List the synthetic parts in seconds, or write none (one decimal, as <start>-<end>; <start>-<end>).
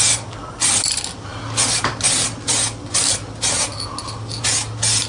none